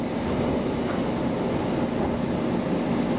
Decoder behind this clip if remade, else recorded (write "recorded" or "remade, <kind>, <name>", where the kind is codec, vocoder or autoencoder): recorded